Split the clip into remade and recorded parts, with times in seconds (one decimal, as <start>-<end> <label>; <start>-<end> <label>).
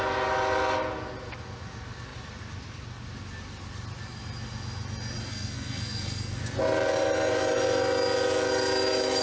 0.0-5.3 recorded; 5.3-6.4 remade; 6.4-9.2 recorded